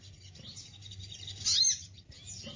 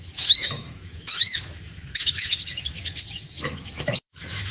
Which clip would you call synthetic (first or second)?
second